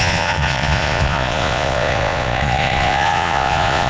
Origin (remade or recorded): remade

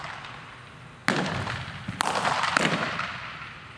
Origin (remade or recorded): recorded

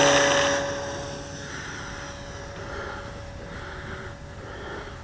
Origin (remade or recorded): recorded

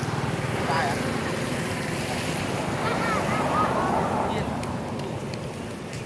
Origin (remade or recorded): recorded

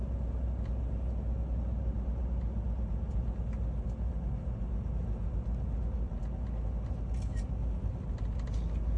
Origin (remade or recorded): recorded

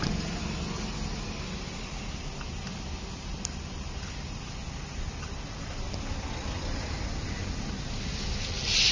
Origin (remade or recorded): recorded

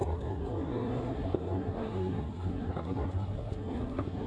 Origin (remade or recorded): remade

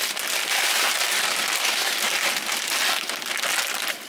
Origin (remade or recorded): recorded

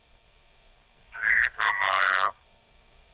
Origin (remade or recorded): remade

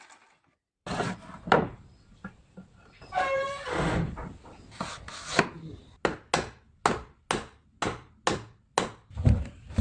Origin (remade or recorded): recorded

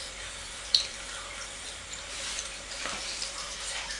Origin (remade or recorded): remade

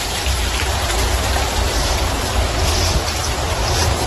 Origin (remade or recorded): remade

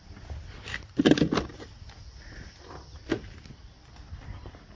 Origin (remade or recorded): recorded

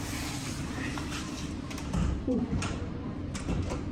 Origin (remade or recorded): recorded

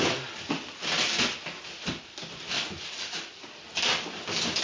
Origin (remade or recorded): recorded